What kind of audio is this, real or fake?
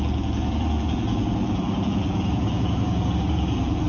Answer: fake